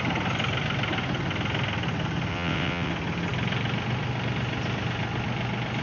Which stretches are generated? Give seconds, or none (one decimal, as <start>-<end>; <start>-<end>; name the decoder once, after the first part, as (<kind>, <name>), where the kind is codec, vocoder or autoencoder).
2.3-2.9 (vocoder, WaveNeXt)